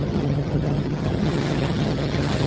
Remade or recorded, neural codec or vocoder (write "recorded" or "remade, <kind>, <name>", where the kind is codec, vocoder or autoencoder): remade, vocoder, HiFi-GAN